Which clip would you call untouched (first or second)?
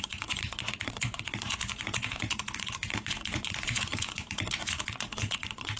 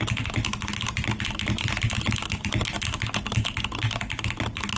second